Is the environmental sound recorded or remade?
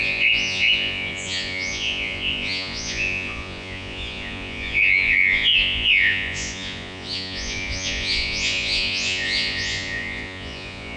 remade